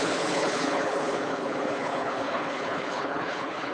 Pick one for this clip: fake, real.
fake